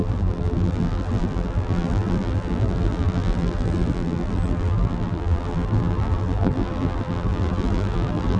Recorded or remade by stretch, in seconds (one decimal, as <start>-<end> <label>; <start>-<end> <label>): 0.0-8.4 remade